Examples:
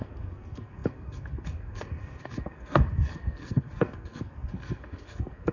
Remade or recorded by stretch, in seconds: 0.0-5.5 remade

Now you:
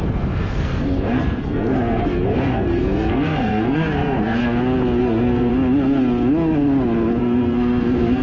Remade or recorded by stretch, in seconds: 0.0-4.4 remade; 4.4-5.0 recorded; 5.0-5.5 remade; 5.5-7.2 recorded; 7.2-8.2 remade

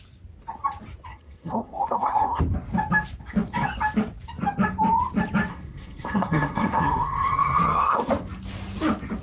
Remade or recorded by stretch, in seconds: 0.0-1.1 recorded; 1.1-2.4 remade; 2.4-5.5 recorded; 5.5-8.1 remade; 8.1-9.2 recorded

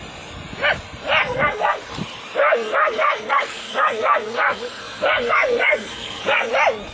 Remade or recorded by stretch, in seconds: 0.0-1.2 recorded; 1.2-1.8 remade; 1.8-2.4 recorded; 2.4-6.5 remade; 6.5-6.9 recorded

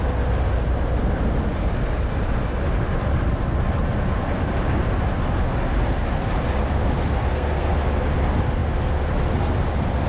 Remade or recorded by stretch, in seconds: 0.0-7.2 recorded; 7.2-7.7 remade; 7.7-10.1 recorded